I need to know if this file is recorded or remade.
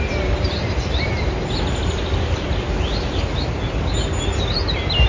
recorded